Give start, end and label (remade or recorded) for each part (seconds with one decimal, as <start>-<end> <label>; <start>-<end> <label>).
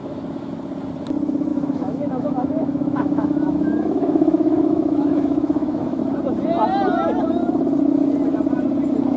0.0-0.5 remade; 0.5-1.5 recorded; 1.5-6.0 remade; 6.0-9.2 recorded